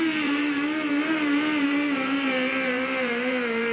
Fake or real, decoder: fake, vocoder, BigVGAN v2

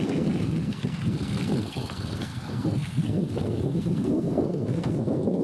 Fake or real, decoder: fake, codec, SNAC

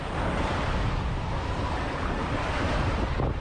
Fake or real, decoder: real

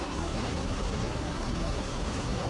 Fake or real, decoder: fake, codec, SNAC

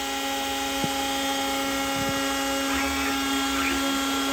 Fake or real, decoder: real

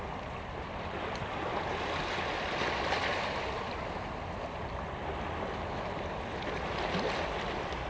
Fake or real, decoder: real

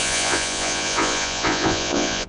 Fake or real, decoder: fake, vocoder, Vocos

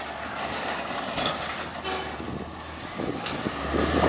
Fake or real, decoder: real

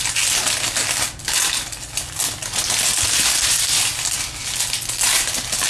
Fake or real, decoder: real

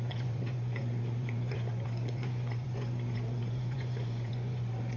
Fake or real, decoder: fake, vocoder, Vocos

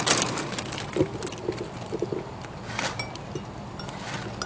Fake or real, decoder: real